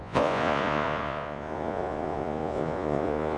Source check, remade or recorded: remade